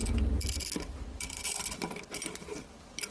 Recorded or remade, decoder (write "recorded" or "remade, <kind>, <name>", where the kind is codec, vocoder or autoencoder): recorded